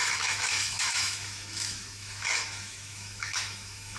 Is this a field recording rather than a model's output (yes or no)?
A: no